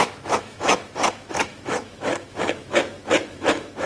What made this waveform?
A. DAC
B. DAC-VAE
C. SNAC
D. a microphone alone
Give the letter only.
B